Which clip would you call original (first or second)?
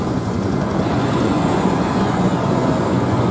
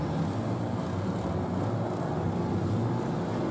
second